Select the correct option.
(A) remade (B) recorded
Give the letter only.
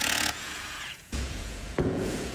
A